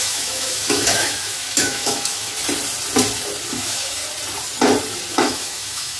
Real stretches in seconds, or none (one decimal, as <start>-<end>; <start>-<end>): 2.3-3.5; 4.0-5.1